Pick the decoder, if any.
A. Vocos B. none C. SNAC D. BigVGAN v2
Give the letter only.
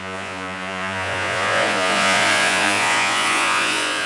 A